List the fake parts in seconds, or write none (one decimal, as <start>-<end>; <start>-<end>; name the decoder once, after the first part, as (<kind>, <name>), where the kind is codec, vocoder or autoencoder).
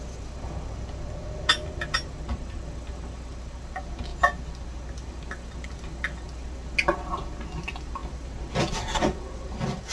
none